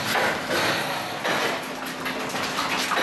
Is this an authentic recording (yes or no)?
yes